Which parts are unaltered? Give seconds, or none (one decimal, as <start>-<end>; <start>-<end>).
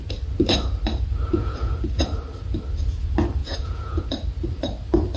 0.0-1.3; 2.0-3.4; 4.1-5.2